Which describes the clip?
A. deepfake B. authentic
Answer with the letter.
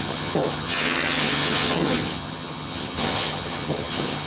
A